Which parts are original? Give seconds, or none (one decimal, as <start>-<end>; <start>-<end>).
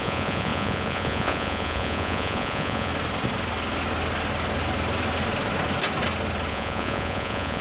2.9-6.5